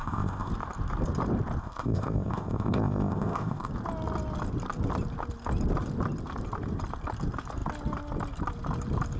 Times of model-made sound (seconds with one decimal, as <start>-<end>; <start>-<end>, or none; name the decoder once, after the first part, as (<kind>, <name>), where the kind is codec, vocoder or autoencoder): 0.0-0.5 (codec, ZipCodec); 1.6-3.7